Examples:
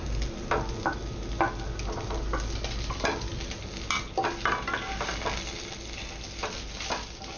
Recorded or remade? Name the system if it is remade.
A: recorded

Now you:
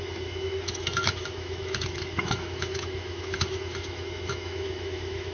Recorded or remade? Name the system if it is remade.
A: remade, autoencoder, DAC-VAE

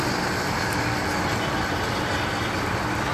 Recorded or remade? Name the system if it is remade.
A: recorded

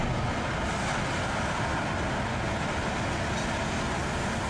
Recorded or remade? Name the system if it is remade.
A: recorded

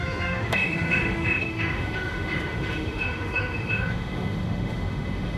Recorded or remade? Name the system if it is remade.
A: remade, autoencoder, DAC-VAE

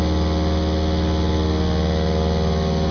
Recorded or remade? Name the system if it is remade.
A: recorded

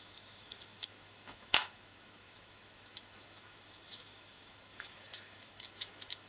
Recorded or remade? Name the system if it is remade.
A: remade, autoencoder, DAC-VAE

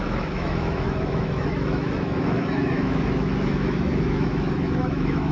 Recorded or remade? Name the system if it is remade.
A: remade, autoencoder, DAC-VAE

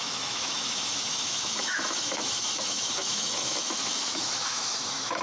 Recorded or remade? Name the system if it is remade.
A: remade, autoencoder, DAC-VAE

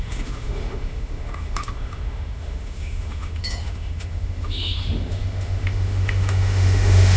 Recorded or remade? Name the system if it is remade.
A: remade, autoencoder, DAC-VAE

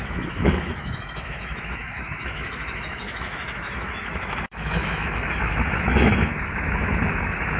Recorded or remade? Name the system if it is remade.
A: remade, autoencoder, DAC-VAE